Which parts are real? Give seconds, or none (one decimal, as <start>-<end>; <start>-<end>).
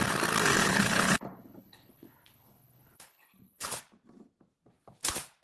0.0-0.6; 3.8-5.4